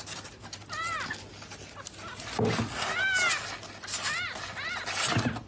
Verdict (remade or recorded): recorded